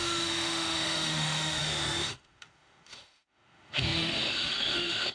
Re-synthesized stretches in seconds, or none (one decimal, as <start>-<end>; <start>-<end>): 0.0-5.1